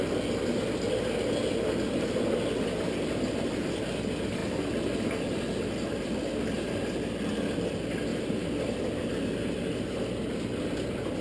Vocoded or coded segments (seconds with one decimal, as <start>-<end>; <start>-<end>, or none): 8.1-8.6